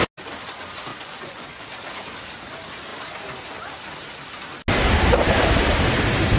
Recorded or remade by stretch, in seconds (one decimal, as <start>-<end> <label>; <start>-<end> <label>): 0.0-0.9 recorded; 0.9-1.6 remade; 1.6-6.4 recorded